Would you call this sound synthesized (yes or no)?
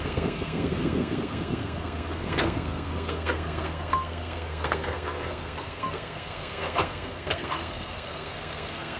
yes